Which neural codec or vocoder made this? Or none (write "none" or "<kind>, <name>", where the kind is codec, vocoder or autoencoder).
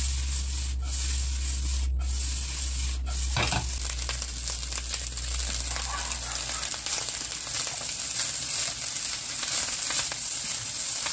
none